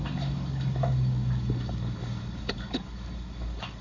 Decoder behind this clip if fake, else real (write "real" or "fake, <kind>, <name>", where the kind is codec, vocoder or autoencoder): fake, codec, DAC